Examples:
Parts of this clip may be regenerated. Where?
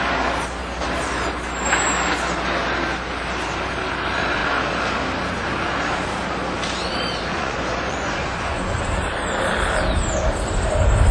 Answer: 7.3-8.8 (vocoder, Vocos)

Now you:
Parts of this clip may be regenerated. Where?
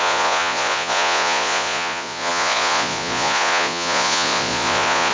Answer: 0.0-5.1 (vocoder, Vocos)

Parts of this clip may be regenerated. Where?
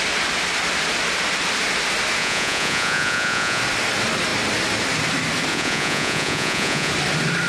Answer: 2.2-3.6 (vocoder, Vocos); 5.5-6.9